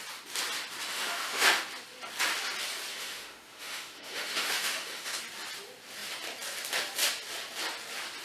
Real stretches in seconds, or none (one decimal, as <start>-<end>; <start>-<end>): 0.0-0.9; 1.6-2.9; 5.2-8.2

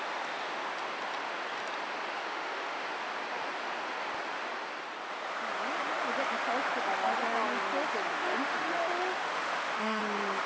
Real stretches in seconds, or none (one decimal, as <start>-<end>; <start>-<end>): 0.0-2.2; 2.8-8.1; 8.7-9.2; 10.0-10.5